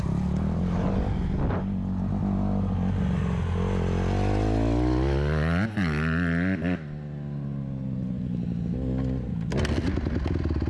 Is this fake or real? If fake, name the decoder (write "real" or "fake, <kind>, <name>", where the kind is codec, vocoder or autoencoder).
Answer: real